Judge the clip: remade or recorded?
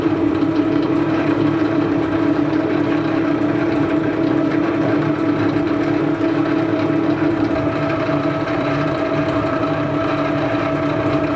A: remade